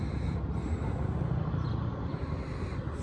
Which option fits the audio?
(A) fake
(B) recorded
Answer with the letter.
B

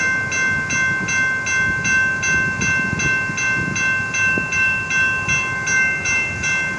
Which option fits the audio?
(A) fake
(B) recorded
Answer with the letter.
B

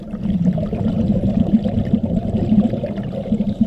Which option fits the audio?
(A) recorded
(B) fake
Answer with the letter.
B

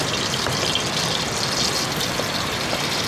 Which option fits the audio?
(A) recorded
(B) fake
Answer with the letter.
A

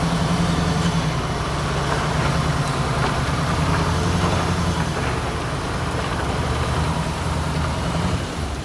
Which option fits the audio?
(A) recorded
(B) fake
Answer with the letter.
B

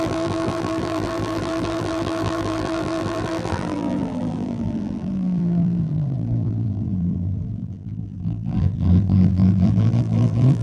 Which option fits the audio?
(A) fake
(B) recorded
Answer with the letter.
A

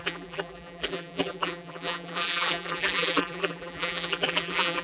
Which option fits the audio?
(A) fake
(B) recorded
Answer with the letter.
A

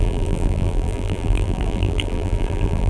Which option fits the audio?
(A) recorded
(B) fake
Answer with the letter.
B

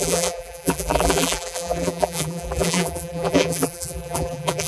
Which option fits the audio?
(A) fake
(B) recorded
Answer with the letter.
A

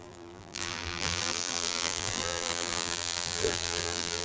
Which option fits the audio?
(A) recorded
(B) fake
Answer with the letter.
B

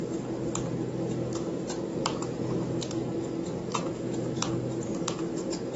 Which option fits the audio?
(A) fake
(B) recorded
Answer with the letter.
B